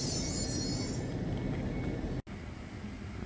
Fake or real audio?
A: real